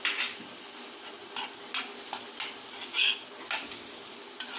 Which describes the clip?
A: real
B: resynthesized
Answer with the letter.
A